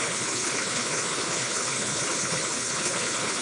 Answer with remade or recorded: remade